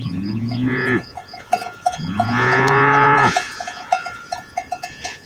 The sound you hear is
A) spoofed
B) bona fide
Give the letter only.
A